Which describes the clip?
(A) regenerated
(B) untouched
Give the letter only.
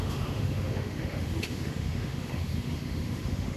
A